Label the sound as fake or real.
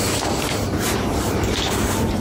fake